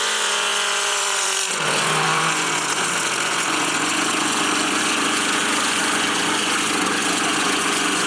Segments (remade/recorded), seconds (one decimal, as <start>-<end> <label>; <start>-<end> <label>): 0.0-8.1 remade